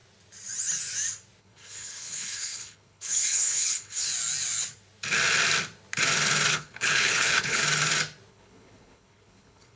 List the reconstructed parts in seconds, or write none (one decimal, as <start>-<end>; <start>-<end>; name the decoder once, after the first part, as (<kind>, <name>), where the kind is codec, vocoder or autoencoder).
1.4-4.1 (codec, HILCodec); 6.5-7.6; 8.3-9.8